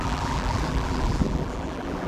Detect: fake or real fake